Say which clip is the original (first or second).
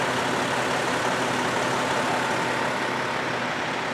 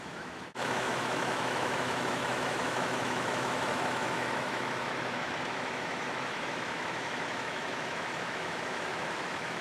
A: first